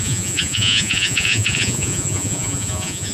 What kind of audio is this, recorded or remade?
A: remade